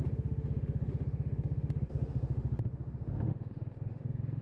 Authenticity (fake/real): fake